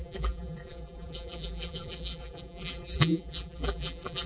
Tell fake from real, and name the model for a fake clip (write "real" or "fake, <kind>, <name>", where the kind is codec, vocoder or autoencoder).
fake, vocoder, BigVGAN v2